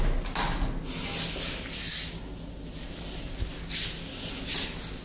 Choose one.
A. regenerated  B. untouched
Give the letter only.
B